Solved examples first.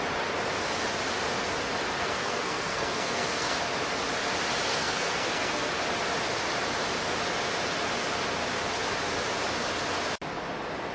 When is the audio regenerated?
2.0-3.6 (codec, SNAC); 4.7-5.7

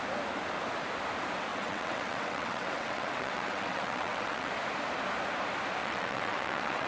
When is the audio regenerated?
1.5-4.5 (vocoder, WaveNeXt); 5.8-6.9